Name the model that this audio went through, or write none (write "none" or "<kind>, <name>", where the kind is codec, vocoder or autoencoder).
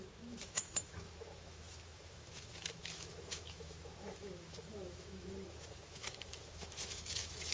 autoencoder, DAC-VAE